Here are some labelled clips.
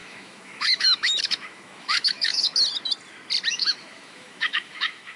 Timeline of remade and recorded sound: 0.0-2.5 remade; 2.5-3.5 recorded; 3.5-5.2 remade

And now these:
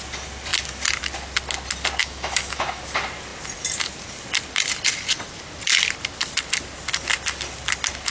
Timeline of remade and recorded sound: 0.0-2.0 recorded; 2.0-2.8 remade; 2.8-8.1 recorded

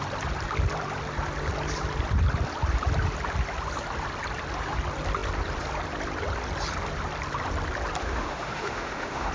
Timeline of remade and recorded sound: 0.0-8.0 recorded; 8.0-9.3 remade

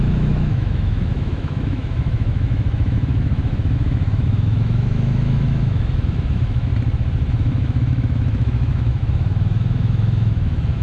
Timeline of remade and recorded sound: 0.0-6.7 remade; 6.7-7.3 recorded; 7.3-10.8 remade

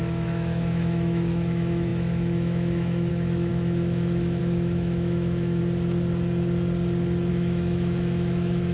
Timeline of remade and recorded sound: 0.0-5.6 remade; 5.6-7.3 recorded; 7.3-8.7 remade